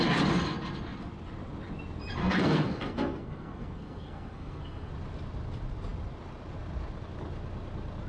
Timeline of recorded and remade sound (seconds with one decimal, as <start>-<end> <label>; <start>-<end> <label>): 0.0-2.2 recorded; 2.2-4.9 remade; 4.9-8.1 recorded